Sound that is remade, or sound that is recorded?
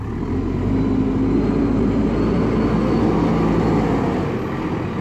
recorded